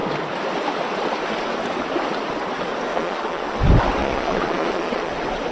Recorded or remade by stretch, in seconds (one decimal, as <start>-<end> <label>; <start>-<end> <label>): 0.0-2.9 recorded; 2.9-3.6 remade; 3.6-4.0 recorded; 4.0-5.1 remade; 5.1-5.5 recorded